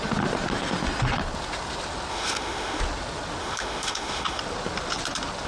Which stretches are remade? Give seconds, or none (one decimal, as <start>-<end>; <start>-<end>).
2.1-2.8; 3.4-4.4